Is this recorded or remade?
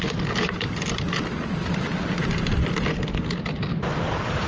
recorded